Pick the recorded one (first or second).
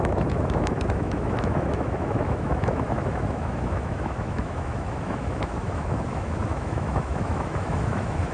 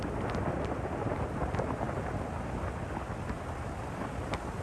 second